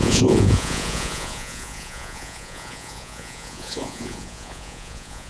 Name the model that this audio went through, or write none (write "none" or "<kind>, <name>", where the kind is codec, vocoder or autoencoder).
vocoder, Vocos